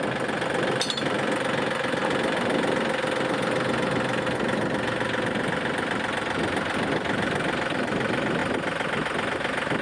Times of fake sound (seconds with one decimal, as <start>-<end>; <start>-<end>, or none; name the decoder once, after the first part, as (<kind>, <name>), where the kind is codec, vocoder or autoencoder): none